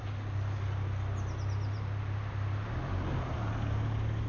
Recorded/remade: recorded